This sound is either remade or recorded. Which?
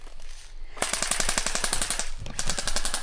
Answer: recorded